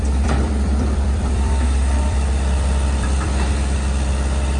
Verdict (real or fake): fake